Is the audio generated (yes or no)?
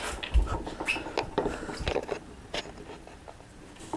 no